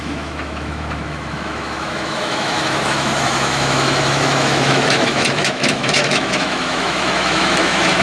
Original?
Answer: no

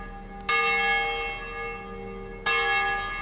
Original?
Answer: yes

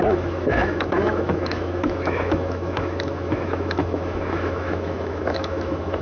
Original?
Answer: no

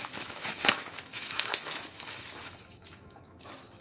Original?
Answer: no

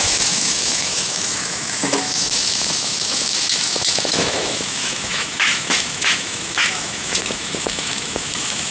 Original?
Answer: no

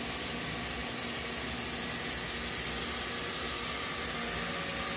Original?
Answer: yes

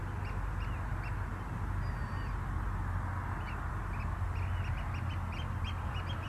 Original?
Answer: yes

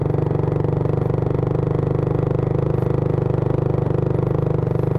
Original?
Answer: yes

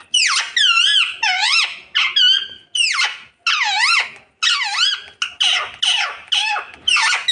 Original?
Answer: yes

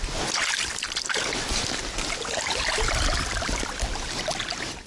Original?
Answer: yes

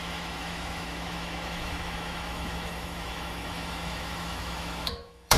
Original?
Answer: no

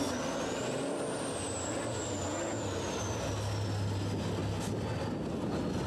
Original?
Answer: yes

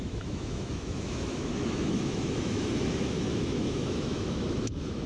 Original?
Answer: no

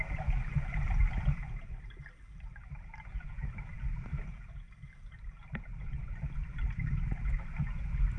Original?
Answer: yes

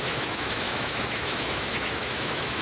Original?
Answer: no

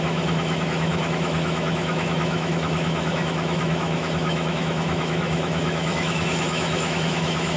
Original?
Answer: no